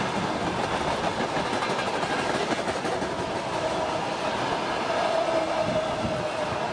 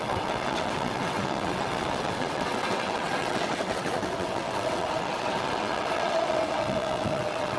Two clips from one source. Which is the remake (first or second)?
second